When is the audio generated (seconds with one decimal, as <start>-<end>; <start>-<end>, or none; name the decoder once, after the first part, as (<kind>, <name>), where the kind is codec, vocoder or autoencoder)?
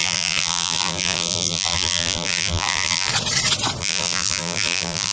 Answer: 0.0-3.1 (vocoder, BigVGAN v2); 3.8-5.1